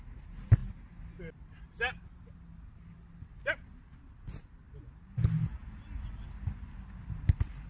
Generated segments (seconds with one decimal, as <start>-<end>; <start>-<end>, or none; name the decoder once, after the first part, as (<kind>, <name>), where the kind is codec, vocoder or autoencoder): none

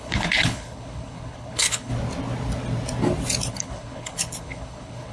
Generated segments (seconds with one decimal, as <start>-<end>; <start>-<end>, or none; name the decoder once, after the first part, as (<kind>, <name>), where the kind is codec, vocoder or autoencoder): 0.0-1.9 (codec, HILCodec); 3.5-5.1

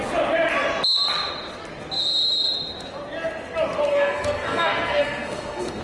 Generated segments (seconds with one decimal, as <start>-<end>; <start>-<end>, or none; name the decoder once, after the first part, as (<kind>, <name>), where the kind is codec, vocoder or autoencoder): 3.9-5.8 (codec, SNAC)